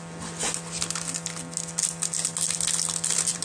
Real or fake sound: real